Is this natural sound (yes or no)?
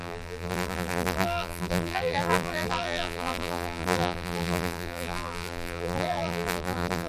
no